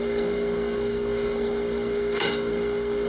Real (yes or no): no